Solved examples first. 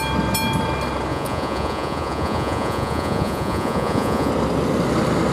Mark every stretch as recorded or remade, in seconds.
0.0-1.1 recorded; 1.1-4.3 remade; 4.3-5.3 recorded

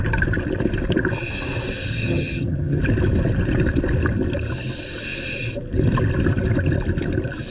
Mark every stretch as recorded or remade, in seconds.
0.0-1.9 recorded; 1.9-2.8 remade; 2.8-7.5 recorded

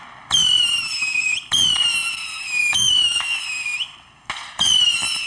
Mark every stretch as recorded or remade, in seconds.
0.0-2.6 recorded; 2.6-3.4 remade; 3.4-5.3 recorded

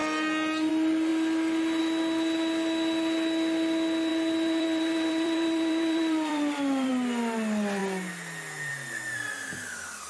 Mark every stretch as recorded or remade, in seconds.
0.0-4.1 recorded; 4.1-6.9 remade; 6.9-10.1 recorded